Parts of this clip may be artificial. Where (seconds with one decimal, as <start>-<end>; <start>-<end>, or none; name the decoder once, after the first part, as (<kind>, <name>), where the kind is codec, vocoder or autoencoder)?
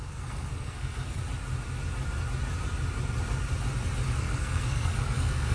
0.0-1.2 (codec, SNAC); 4.2-5.5